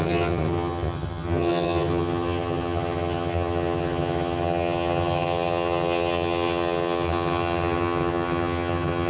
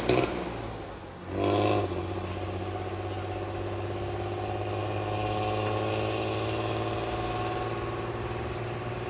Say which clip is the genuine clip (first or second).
second